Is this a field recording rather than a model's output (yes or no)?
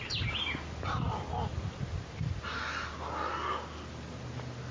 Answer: yes